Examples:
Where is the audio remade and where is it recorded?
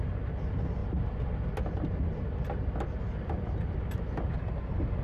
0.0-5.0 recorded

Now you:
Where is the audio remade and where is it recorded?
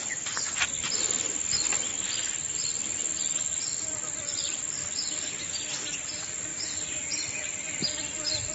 0.0-6.5 recorded; 6.5-7.1 remade; 7.1-8.5 recorded